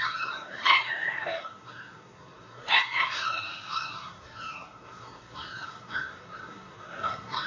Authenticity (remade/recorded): remade